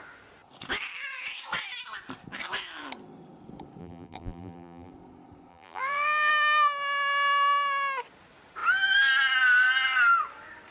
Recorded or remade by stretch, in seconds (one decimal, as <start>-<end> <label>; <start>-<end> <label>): 0.0-3.8 recorded; 3.8-4.9 remade; 4.9-5.5 recorded; 5.5-6.3 remade; 6.3-10.7 recorded